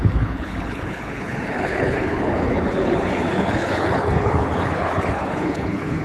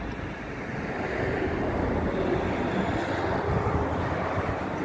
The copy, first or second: first